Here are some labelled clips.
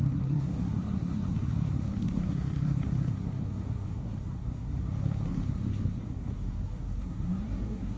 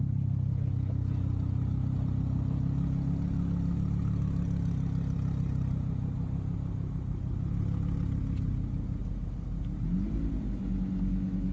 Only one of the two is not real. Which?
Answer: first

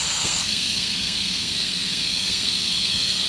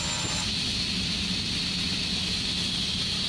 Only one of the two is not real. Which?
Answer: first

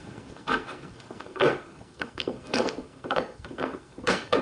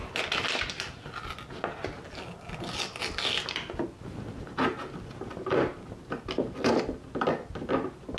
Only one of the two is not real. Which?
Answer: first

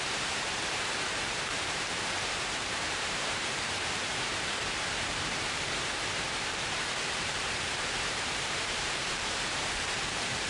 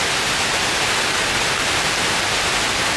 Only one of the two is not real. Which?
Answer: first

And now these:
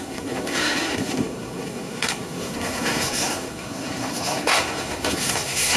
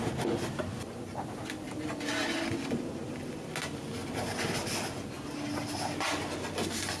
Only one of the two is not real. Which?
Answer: first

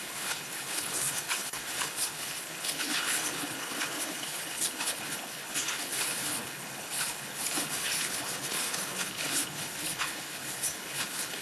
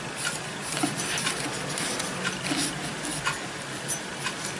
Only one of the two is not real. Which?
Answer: first